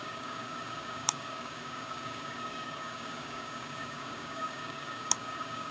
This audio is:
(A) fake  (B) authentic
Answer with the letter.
A